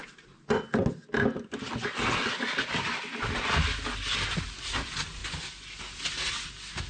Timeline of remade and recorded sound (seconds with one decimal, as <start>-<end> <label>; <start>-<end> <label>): 0.0-6.9 recorded